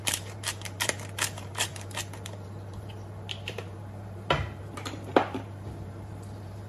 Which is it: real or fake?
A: fake